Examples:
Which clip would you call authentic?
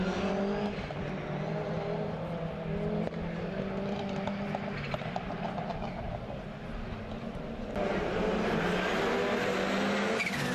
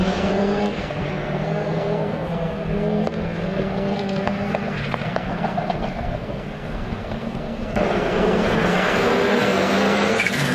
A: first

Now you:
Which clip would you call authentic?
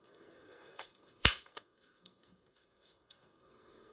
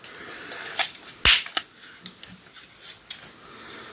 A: second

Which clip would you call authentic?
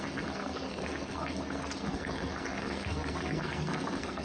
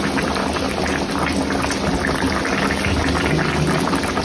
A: second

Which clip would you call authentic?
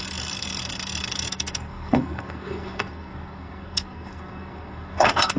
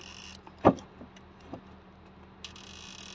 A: second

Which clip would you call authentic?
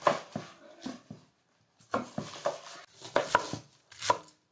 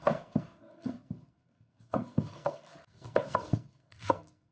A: first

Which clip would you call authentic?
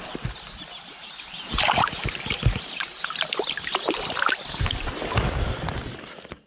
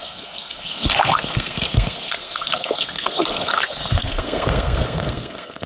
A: first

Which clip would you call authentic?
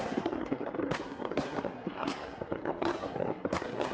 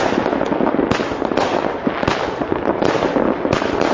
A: second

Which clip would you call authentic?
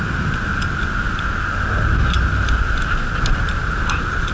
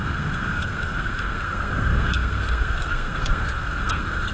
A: first